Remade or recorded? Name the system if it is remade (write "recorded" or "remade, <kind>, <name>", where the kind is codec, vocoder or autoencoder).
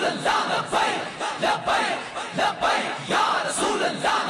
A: recorded